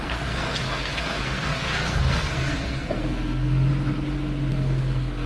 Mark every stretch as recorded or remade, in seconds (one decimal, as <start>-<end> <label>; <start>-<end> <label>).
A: 0.0-3.7 remade; 3.7-4.5 recorded; 4.5-5.3 remade